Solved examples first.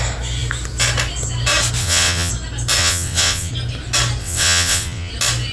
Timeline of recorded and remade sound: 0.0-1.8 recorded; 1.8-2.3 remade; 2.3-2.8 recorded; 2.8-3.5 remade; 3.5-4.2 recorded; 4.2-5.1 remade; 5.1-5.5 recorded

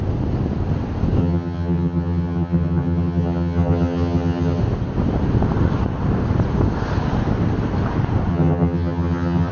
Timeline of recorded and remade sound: 0.0-1.2 recorded; 1.2-4.6 remade; 4.6-8.3 recorded; 8.3-9.5 remade

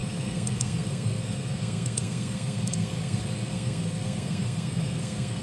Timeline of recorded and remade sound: 0.0-5.4 remade

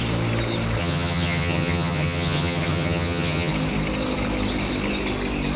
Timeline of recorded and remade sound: 0.0-0.8 recorded; 0.8-3.5 remade; 3.5-5.6 recorded

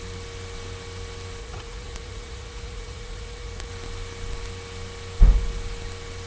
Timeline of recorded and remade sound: 0.0-1.4 recorded; 1.4-3.7 remade; 3.7-6.3 recorded

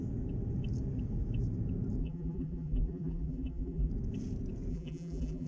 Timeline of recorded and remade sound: 0.0-2.0 recorded; 2.0-3.9 remade; 3.9-4.7 recorded; 4.7-5.5 remade